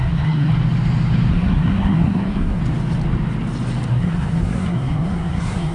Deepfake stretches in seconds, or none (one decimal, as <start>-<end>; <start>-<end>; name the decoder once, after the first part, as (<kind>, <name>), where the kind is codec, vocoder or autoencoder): 0.0-0.5 (codec, SNAC); 1.3-2.6; 3.9-5.7